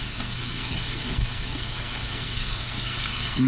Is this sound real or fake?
fake